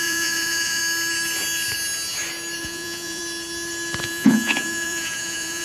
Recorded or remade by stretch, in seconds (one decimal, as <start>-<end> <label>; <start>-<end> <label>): 0.0-0.8 remade; 0.8-2.6 recorded; 2.6-3.2 remade; 3.2-4.0 recorded; 4.0-5.6 remade